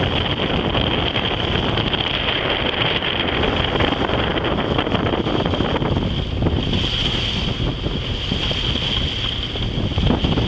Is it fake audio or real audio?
real